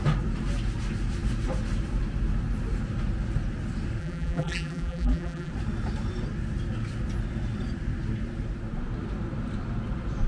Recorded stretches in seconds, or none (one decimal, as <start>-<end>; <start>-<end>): 0.0-4.0; 5.5-10.3

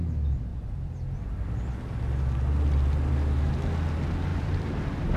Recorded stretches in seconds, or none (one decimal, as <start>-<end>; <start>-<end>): 0.0-0.5; 2.0-4.3; 4.8-5.2

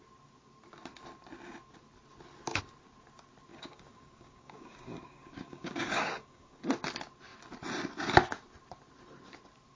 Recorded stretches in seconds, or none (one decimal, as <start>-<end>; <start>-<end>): 0.0-3.5; 6.6-9.8